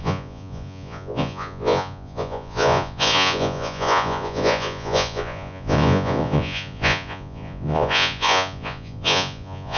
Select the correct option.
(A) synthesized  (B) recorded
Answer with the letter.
A